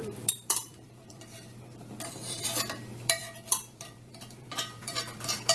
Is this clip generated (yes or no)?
yes